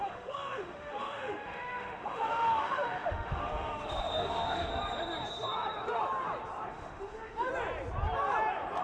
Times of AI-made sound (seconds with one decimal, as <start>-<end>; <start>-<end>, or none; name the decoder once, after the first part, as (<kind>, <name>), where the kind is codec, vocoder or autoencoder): 0.0-4.7 (autoencoder, DAC-VAE); 6.7-7.5